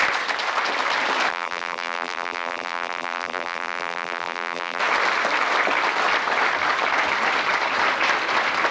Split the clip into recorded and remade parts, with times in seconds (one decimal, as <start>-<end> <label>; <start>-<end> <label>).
0.0-1.3 recorded; 1.3-4.8 remade; 4.8-8.7 recorded